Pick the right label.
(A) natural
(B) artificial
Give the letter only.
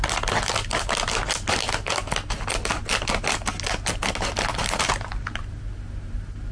A